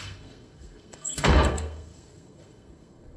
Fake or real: fake